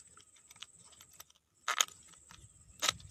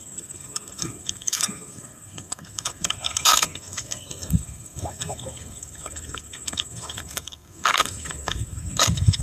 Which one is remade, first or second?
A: second